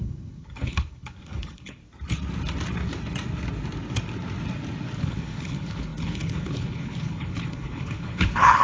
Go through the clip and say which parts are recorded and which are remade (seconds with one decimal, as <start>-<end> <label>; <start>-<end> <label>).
0.0-1.8 remade; 1.8-5.0 recorded; 5.0-8.6 remade